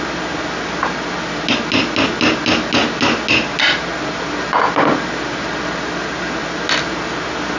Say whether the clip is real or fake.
real